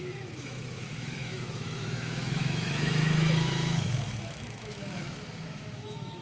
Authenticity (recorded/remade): remade